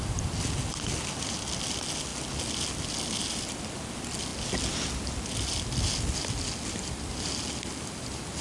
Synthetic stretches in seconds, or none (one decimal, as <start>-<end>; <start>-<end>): none